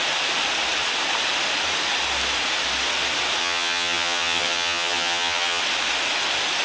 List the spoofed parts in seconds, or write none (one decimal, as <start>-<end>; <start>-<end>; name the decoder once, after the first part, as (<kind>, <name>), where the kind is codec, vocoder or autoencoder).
3.4-5.6 (vocoder, HiFi-GAN)

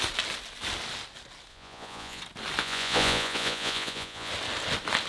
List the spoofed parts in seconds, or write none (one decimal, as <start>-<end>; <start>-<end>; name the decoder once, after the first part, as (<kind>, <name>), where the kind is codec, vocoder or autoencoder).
1.5-2.2 (vocoder, Vocos); 2.6-4.3

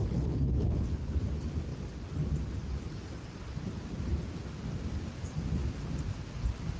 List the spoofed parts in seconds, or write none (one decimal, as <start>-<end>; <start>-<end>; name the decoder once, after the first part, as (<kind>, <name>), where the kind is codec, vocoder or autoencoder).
0.0-1.2 (codec, HILCodec)

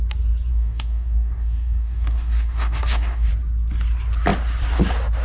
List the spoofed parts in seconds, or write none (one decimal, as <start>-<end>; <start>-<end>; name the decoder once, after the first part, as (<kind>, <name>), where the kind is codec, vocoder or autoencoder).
0.5-3.3 (codec, DAC)

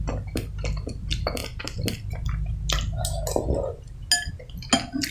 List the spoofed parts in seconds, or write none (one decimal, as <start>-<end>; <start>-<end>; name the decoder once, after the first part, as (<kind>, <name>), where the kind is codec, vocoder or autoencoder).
none

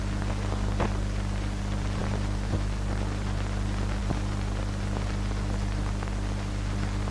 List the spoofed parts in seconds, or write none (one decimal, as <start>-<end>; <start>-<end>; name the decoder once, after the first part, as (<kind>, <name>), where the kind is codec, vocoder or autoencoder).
none

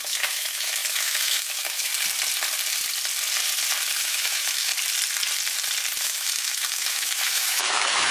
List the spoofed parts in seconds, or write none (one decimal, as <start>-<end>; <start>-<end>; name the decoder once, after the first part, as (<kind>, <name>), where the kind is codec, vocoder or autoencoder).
0.0-1.9 (autoencoder, DAC-VAE); 4.0-4.7; 6.0-8.1

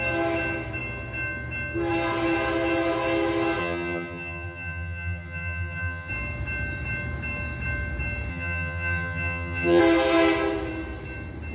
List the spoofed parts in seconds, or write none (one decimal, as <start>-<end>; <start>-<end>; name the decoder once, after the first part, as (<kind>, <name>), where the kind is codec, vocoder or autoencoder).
3.6-6.1 (vocoder, HiFi-GAN); 8.3-9.8